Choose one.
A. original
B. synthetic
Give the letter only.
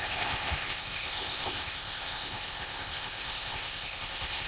B